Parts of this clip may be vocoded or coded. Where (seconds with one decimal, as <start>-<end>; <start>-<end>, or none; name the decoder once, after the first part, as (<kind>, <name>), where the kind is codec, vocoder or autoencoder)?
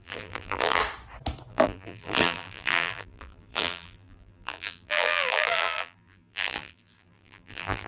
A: 0.0-0.8 (vocoder, BigVGAN v2); 1.5-7.9